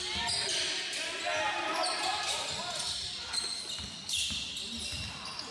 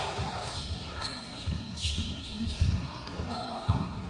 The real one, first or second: first